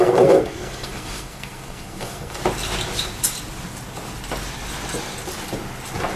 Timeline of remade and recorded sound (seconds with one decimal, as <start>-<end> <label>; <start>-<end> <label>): 0.0-2.4 remade; 2.4-6.2 recorded

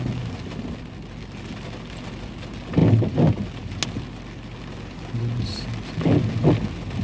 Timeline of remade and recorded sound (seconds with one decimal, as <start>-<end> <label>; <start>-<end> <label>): 0.0-7.0 recorded

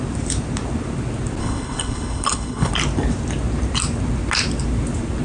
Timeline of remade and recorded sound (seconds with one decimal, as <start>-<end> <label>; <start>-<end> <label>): 0.0-1.4 recorded; 1.4-2.7 remade; 2.7-5.2 recorded

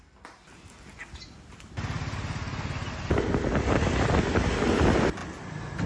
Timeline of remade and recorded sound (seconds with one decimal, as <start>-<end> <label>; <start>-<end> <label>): 0.0-5.9 recorded

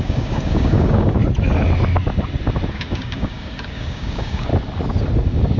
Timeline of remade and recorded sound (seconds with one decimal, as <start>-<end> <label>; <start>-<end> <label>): 0.0-1.2 remade; 1.2-2.7 recorded; 2.7-4.5 remade; 4.5-5.6 recorded

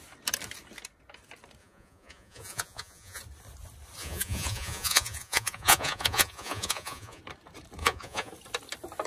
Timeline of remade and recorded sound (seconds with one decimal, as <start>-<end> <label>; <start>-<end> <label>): 0.0-1.6 recorded; 1.6-3.2 remade; 3.2-4.0 recorded; 4.0-7.2 remade; 7.2-7.8 recorded; 7.8-8.3 remade; 8.3-9.1 recorded

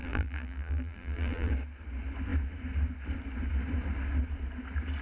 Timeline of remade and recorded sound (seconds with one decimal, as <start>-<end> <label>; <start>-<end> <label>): 0.0-1.5 remade; 1.5-5.0 recorded